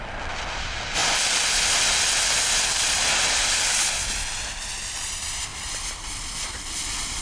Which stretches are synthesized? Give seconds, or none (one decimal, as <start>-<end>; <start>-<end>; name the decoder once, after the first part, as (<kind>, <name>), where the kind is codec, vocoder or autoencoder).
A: none

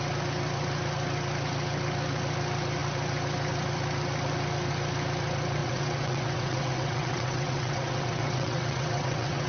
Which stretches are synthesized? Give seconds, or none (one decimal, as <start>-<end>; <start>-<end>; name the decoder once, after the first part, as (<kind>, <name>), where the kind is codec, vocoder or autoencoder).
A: 5.6-9.5 (vocoder, WaveNeXt)

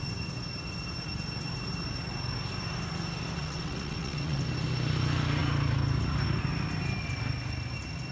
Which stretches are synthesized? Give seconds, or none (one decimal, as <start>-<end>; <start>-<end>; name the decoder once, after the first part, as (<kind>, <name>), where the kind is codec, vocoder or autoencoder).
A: 3.4-4.4 (vocoder, WaveNeXt)

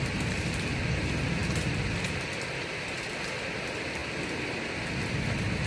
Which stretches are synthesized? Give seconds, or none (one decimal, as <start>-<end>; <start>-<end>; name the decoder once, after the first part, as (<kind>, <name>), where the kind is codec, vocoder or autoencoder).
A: none

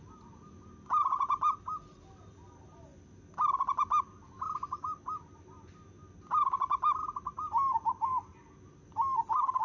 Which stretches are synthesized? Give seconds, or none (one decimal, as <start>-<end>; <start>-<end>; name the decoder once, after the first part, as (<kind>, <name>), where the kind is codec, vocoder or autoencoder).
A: none

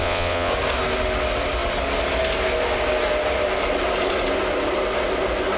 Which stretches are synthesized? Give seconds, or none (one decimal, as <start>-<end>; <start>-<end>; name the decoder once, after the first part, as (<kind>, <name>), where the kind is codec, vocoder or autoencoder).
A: 0.0-0.5 (vocoder, WaveNeXt)